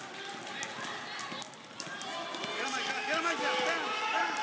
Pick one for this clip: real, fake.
real